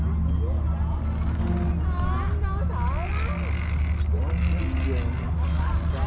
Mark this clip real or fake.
real